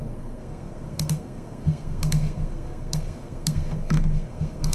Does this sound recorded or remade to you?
remade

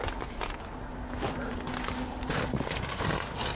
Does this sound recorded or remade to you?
recorded